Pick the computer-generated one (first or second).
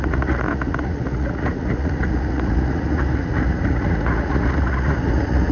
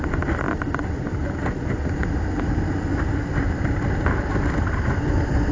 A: first